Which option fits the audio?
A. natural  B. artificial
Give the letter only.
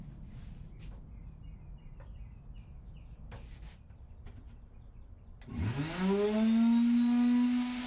A